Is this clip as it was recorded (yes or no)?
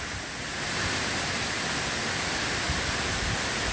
yes